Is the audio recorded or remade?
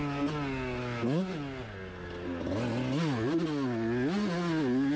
recorded